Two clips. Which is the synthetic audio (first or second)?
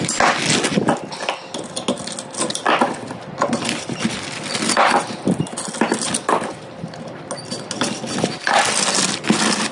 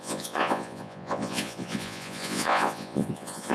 second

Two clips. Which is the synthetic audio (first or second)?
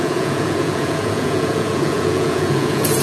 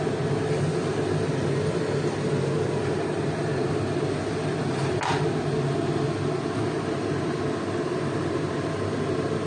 first